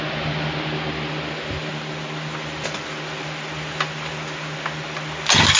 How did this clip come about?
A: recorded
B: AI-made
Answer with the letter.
A